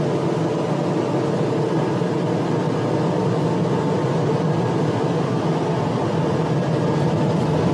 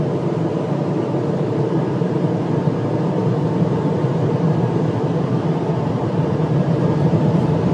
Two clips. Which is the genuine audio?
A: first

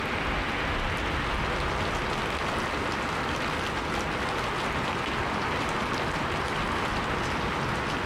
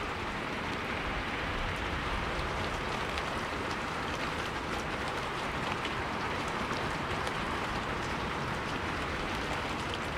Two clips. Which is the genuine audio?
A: first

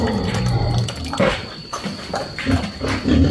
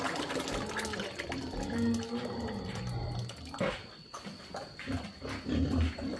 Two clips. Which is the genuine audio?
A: second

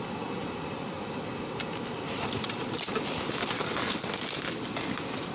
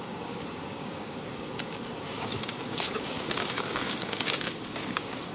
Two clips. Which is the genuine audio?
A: first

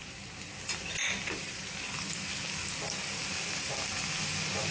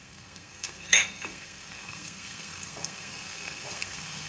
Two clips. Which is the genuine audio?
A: first